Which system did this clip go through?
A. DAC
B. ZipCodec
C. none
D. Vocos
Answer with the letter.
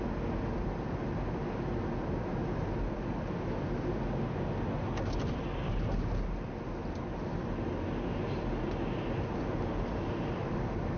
C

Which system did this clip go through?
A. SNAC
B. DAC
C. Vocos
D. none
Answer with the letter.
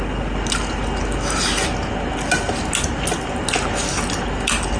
D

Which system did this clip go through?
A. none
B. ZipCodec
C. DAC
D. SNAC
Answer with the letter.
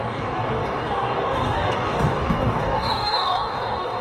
C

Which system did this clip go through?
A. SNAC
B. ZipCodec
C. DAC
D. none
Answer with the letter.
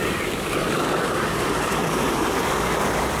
C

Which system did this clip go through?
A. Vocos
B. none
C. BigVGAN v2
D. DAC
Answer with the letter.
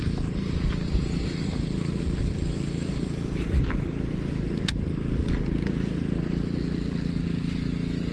B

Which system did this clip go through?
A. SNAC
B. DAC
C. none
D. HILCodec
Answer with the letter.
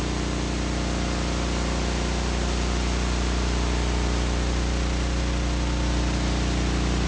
C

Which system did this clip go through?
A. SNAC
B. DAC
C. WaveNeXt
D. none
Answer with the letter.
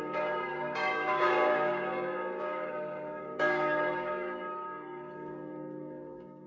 B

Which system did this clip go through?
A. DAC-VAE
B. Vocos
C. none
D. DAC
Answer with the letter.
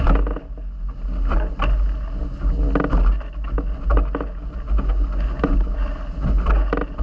C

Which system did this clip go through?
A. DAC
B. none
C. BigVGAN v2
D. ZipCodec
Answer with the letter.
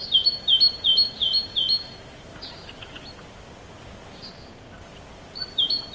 B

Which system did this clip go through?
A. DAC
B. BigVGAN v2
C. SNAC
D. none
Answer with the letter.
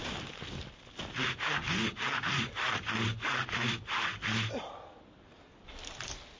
D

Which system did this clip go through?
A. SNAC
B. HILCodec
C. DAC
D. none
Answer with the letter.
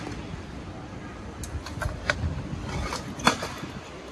D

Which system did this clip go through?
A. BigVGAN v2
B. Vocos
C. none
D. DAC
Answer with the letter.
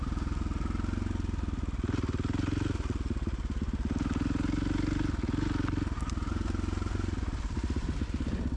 C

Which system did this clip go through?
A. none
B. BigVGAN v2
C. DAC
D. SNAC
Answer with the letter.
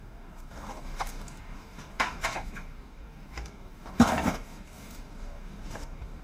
C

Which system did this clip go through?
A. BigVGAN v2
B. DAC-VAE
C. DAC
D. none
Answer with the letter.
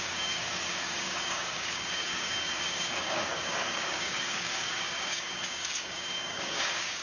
C